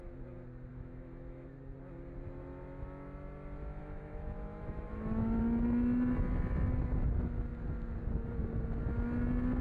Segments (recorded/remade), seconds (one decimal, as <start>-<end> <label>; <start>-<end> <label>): 0.0-0.7 recorded; 0.7-1.5 remade; 1.5-3.8 recorded; 3.8-5.4 remade; 5.4-9.6 recorded